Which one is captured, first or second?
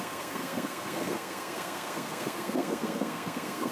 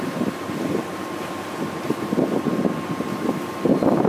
second